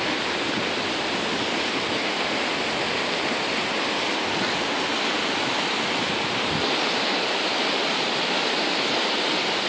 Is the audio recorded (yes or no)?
yes